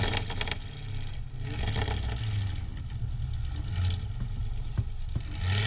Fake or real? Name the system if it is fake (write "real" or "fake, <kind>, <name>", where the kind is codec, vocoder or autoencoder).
real